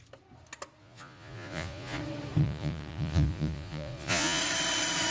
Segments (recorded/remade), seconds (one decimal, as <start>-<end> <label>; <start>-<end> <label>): 0.0-0.8 recorded; 0.8-2.0 remade; 2.0-2.4 recorded; 2.4-4.4 remade; 4.4-5.1 recorded